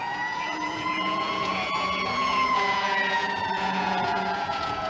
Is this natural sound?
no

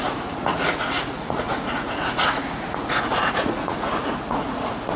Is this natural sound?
no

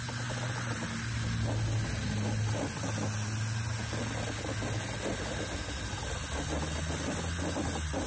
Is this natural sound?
yes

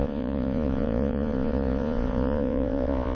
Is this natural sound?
no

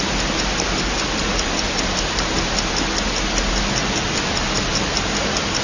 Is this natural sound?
yes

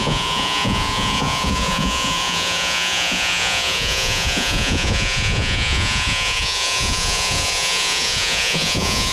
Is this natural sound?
no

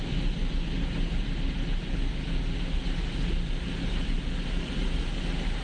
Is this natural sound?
yes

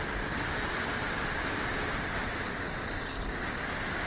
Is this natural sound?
yes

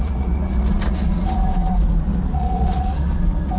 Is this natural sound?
no